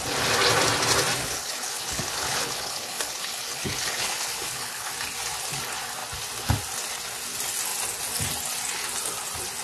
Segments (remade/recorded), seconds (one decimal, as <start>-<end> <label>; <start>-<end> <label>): 0.0-1.2 recorded; 1.2-4.9 remade; 4.9-9.6 recorded